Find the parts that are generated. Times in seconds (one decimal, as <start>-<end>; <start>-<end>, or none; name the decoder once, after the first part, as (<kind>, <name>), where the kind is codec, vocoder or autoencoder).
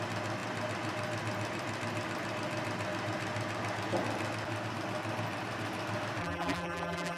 6.2-7.2 (vocoder, BigVGAN v2)